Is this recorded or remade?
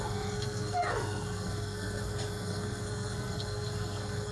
remade